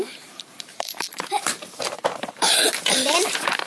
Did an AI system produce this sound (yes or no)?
yes